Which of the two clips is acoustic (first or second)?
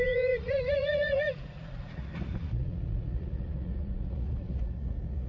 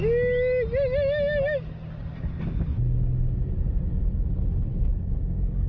second